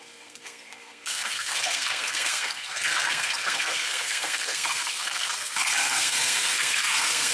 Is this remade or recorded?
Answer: remade